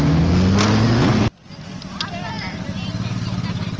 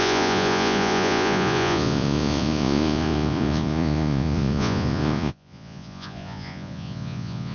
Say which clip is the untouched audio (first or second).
first